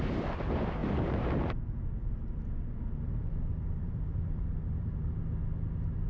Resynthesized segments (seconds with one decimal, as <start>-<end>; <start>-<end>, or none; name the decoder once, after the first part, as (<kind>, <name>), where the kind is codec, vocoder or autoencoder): 0.8-1.6 (vocoder, BigVGAN v2); 3.8-5.2